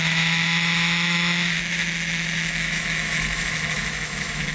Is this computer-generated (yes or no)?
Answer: yes